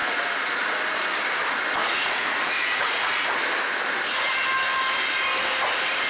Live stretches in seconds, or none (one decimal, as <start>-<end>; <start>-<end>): 0.7-1.8; 3.4-6.1